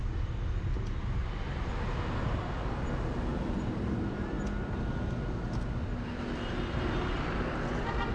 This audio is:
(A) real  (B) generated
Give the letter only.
A